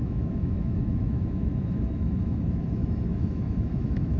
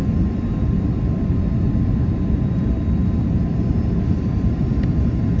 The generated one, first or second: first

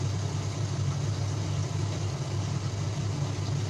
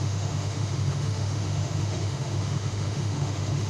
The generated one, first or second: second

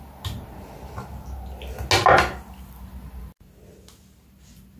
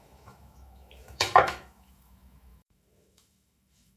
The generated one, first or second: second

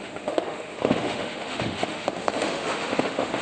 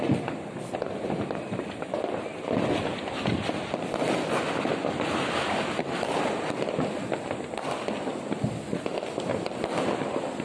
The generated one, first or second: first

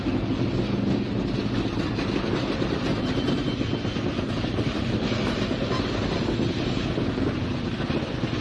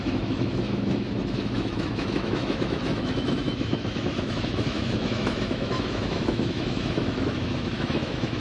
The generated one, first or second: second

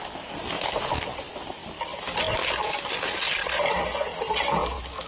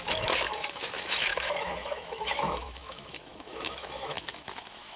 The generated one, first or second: second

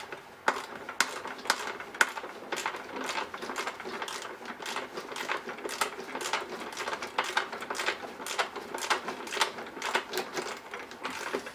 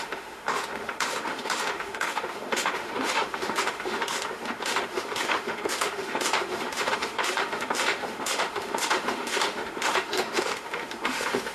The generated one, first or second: second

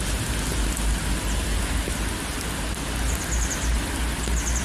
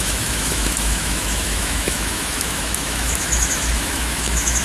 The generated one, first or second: second